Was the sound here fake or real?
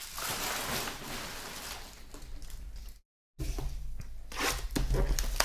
real